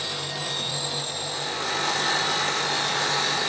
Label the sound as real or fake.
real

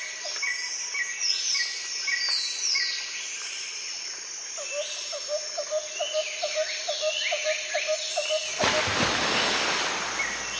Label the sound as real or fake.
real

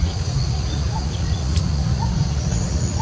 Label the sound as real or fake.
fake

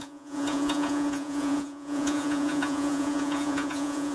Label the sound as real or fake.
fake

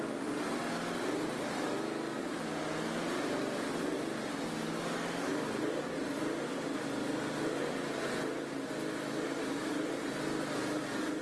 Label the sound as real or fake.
real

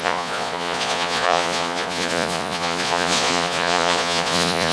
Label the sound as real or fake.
fake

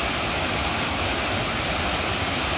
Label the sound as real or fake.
real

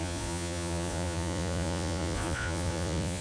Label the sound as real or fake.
fake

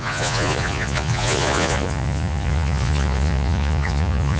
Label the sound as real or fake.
fake